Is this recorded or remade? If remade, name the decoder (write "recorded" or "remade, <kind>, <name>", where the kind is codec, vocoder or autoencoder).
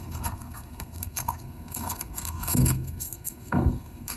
remade, codec, SNAC